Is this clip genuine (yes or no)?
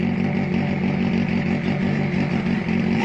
yes